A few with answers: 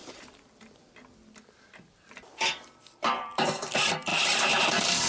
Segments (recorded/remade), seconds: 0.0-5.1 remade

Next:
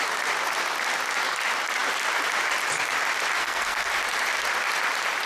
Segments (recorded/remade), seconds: 0.0-3.4 recorded; 3.4-3.9 remade; 3.9-5.3 recorded

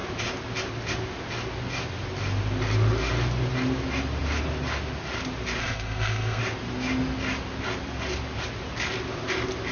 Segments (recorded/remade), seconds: 0.0-5.6 recorded; 5.6-6.4 remade; 6.4-9.7 recorded

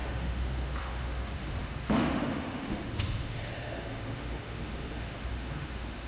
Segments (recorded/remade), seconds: 0.0-6.1 remade

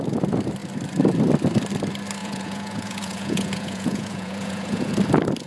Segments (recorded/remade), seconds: 0.0-2.2 recorded; 2.2-4.9 remade; 4.9-5.5 recorded